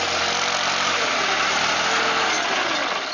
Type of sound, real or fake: real